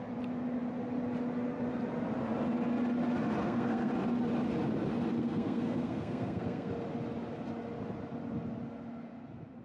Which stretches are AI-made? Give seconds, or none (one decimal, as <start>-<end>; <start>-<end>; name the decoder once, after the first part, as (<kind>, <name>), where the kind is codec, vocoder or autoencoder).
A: 3.4-3.9 (codec, SNAC); 5.2-6.7